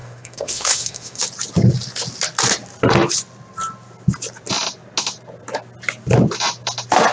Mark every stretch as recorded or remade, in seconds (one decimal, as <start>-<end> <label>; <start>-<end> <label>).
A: 0.0-1.2 remade; 1.2-7.1 recorded